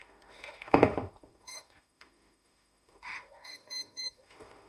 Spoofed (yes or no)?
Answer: yes